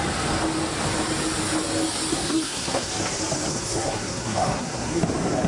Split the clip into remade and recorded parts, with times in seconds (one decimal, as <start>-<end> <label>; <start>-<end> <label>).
0.0-2.1 recorded; 2.1-2.9 remade; 2.9-3.5 recorded; 3.5-5.0 remade; 5.0-5.5 recorded

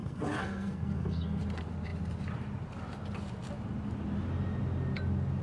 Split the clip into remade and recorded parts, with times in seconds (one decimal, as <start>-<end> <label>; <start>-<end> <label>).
0.0-1.4 remade; 1.4-5.4 recorded

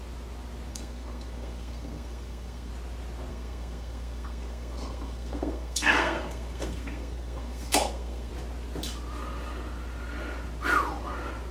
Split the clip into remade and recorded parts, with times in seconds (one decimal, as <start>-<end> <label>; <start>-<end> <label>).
0.0-0.7 recorded; 0.7-2.7 remade; 2.7-3.3 recorded; 3.3-8.3 remade; 8.3-11.5 recorded

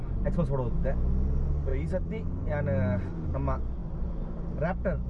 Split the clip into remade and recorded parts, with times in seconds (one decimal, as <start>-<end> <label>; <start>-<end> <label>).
0.0-5.1 recorded

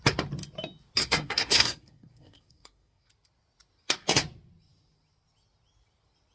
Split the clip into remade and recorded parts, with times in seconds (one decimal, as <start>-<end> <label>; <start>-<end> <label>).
0.0-1.0 recorded; 1.0-3.1 remade; 3.1-6.3 recorded

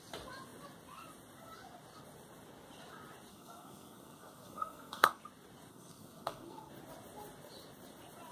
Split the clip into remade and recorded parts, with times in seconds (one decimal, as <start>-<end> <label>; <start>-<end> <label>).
0.0-3.3 recorded; 3.3-5.2 remade; 5.2-5.7 recorded; 5.7-6.7 remade; 6.7-8.3 recorded

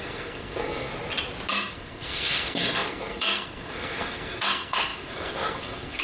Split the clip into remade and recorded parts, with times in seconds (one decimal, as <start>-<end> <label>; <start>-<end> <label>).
0.0-0.9 remade; 0.9-1.5 recorded; 1.5-6.0 remade